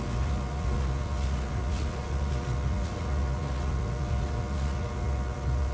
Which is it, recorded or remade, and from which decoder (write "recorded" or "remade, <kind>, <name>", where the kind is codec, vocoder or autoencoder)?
remade, vocoder, Vocos